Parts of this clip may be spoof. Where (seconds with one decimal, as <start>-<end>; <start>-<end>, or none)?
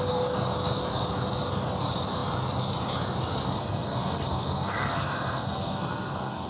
3.6-6.5